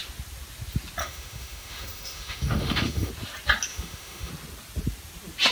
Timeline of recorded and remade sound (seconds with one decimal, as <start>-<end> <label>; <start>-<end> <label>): 0.0-1.0 recorded; 1.0-3.1 remade; 3.1-3.7 recorded; 3.7-4.3 remade; 4.3-5.5 recorded